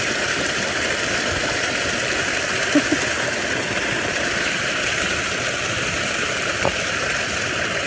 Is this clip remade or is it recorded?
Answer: recorded